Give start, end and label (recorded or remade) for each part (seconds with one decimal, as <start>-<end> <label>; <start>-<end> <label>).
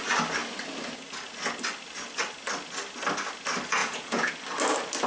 0.0-3.8 recorded; 3.8-4.3 remade; 4.3-5.1 recorded